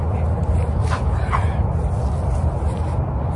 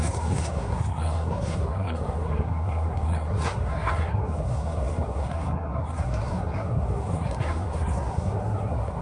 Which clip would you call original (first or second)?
first